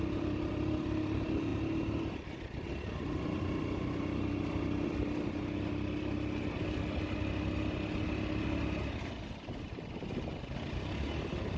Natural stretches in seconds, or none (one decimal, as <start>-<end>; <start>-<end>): 0.0-11.6